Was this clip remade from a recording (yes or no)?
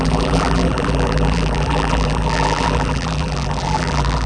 yes